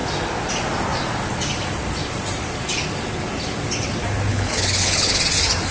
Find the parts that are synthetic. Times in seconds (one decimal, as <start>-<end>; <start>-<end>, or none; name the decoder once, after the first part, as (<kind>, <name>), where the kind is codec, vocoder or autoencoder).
4.3-5.2 (codec, HILCodec)

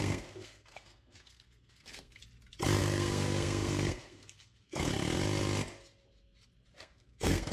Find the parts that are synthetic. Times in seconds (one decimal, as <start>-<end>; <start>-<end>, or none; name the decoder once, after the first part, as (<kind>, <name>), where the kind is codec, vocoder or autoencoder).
0.0-2.2 (codec, SNAC); 2.8-4.9; 6.8-7.5

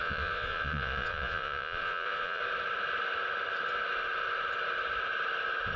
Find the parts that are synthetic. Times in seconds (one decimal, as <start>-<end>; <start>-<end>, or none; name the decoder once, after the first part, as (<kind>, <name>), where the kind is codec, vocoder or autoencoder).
0.0-2.4 (vocoder, Vocos)